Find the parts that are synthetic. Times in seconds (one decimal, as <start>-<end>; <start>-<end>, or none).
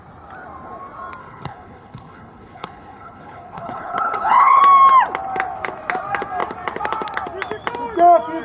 1.2-4.6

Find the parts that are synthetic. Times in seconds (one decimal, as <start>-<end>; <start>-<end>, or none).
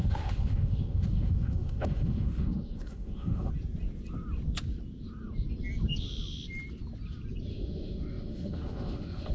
0.0-3.5; 7.5-9.3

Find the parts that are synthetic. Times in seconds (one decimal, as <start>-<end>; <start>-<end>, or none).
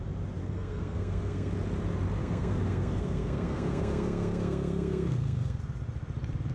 0.4-1.5; 2.2-5.6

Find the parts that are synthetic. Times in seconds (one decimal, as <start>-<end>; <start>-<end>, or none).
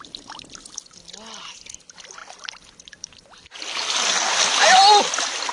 none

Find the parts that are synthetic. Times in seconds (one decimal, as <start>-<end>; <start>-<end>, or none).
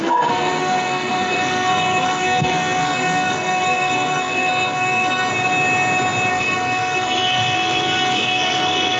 0.0-5.3; 6.3-9.0